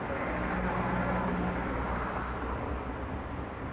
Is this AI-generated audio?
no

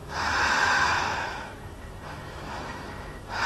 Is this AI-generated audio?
yes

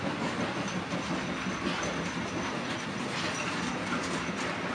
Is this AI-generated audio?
no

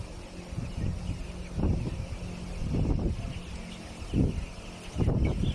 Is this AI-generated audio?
no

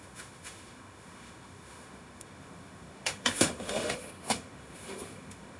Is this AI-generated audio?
yes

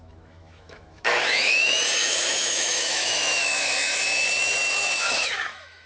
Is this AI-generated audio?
yes